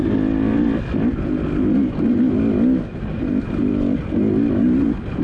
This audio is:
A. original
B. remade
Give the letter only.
A